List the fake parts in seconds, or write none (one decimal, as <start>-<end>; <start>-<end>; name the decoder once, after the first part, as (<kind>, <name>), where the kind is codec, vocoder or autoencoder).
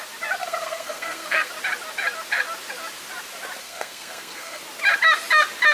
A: 0.4-1.5 (codec, SNAC); 3.6-4.6